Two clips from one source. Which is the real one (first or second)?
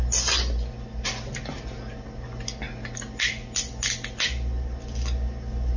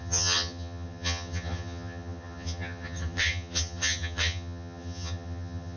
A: first